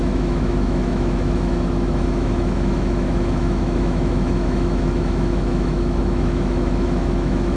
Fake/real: fake